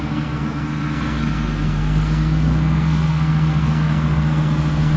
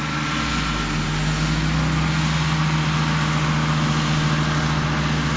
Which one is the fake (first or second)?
first